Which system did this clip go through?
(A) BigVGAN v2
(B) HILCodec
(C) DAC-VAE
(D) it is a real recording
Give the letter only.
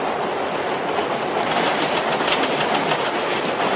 D